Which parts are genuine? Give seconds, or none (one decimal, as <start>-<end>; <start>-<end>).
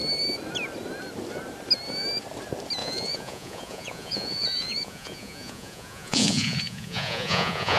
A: 0.0-2.8